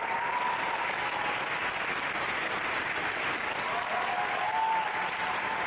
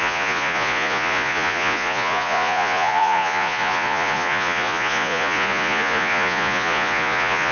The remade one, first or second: second